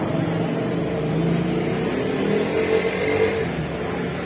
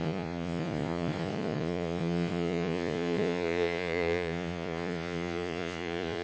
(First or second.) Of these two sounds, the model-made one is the second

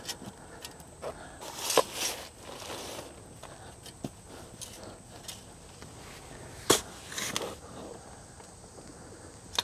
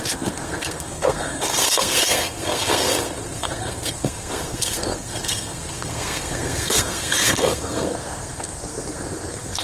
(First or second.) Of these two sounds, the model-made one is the second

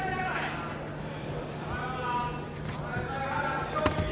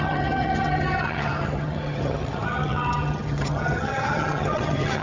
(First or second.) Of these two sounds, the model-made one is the second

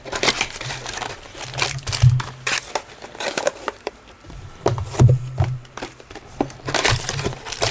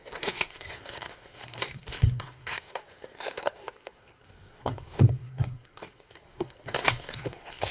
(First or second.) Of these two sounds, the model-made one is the second